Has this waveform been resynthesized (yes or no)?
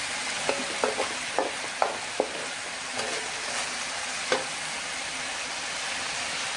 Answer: no